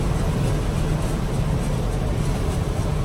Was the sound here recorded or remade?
recorded